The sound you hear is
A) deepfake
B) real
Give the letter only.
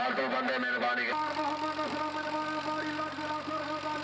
B